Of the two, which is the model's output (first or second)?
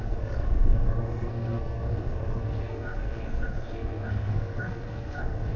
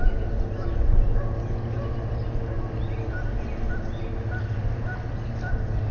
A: first